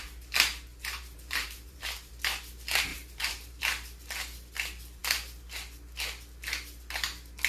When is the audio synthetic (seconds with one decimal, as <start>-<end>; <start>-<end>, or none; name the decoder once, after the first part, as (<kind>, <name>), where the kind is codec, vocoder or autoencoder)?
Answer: 0.7-2.1 (vocoder, BigVGAN v2); 2.9-3.6